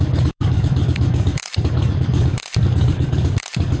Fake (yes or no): yes